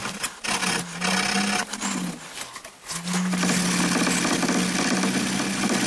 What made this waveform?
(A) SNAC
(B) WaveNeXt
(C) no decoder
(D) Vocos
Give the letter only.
C